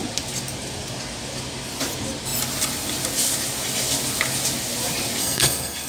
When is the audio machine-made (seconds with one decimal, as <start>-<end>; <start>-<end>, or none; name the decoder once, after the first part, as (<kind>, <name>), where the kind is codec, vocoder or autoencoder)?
5.2-5.9 (codec, SNAC)